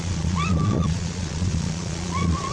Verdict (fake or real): fake